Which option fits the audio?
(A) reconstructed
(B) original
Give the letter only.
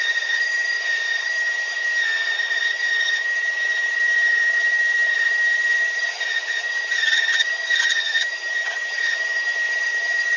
A